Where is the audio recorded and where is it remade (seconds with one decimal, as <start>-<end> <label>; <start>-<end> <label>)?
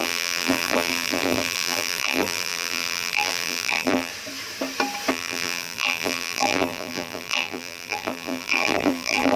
0.0-4.1 remade; 4.1-5.1 recorded; 5.1-9.4 remade